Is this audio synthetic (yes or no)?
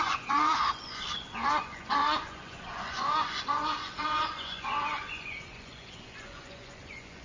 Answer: yes